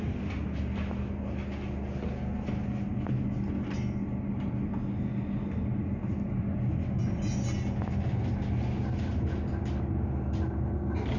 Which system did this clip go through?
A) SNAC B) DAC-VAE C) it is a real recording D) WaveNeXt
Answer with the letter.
C